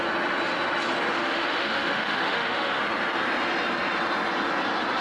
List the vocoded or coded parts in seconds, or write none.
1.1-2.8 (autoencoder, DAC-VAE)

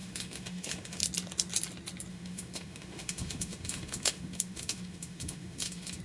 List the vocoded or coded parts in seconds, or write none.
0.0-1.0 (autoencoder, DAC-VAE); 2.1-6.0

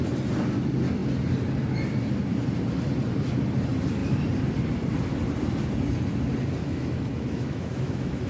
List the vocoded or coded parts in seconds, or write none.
6.6-8.3 (autoencoder, DAC-VAE)

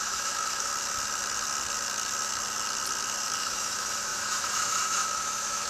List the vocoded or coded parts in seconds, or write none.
0.0-0.7 (autoencoder, DAC-VAE); 3.4-5.7